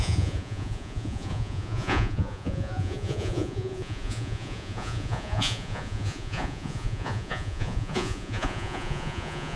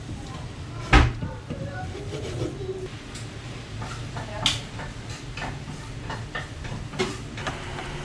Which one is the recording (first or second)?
second